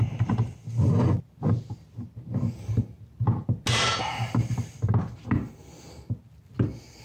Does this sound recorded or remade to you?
recorded